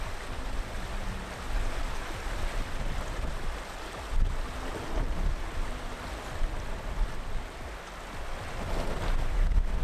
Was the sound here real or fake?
real